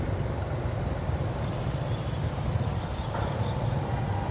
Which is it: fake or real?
real